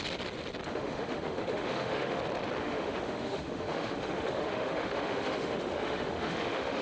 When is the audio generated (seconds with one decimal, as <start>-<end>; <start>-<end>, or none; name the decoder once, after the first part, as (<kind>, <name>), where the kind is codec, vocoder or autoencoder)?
0.7-2.2 (autoencoder, DAC-VAE); 2.6-6.8